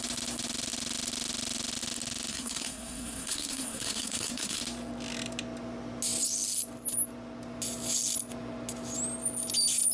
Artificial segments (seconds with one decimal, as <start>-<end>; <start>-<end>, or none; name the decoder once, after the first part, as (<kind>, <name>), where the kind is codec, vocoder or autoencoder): 2.3-4.6 (codec, SNAC)